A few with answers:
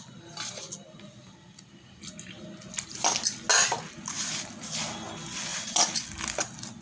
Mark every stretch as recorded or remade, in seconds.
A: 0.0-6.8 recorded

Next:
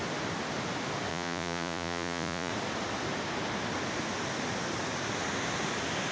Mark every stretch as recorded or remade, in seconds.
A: 0.0-1.1 recorded; 1.1-2.5 remade; 2.5-6.1 recorded

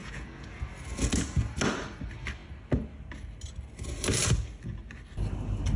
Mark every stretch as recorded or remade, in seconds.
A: 0.0-0.6 remade; 0.6-5.8 recorded

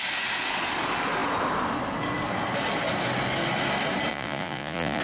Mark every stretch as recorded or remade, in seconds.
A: 0.0-4.1 recorded; 4.1-5.0 remade

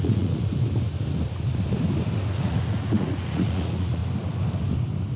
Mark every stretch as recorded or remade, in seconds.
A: 0.0-0.5 remade; 0.5-2.3 recorded; 2.3-4.0 remade; 4.0-5.2 recorded